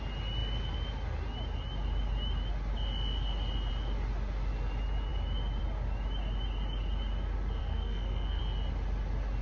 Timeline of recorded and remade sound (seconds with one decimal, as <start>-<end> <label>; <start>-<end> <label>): 0.0-7.6 recorded; 7.6-8.4 remade; 8.4-9.4 recorded